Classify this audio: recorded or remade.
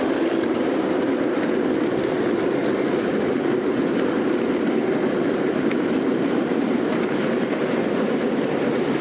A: recorded